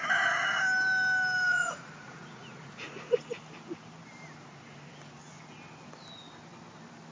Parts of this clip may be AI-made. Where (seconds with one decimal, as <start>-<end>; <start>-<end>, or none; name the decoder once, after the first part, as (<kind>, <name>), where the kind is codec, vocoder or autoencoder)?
1.5-3.2 (vocoder, Vocos)